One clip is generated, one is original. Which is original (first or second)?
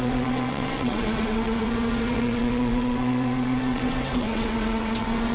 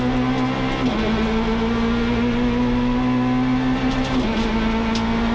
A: second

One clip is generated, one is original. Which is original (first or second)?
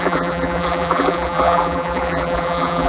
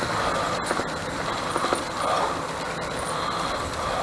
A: second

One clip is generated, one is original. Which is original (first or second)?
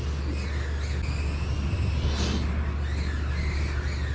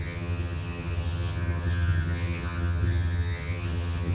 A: first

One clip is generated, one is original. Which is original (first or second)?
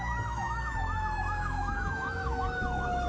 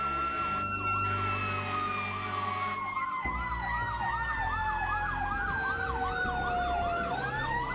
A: second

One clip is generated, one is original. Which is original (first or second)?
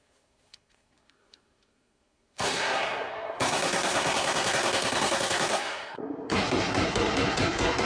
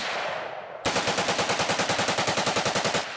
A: second